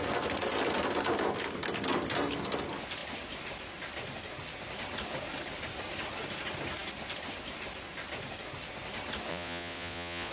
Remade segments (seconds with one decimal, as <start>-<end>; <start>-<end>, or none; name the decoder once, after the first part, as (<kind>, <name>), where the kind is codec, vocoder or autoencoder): 9.3-10.3 (vocoder, Vocos)